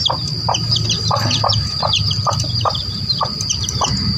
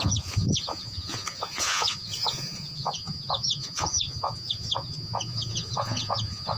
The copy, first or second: second